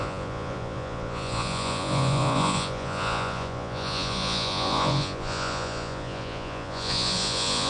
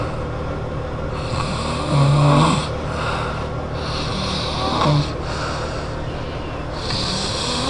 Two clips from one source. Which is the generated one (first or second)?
first